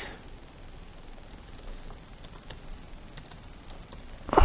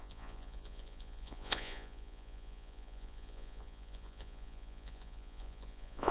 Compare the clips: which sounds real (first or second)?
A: first